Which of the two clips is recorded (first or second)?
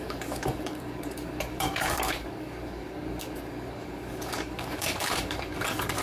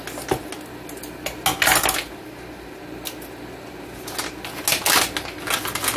second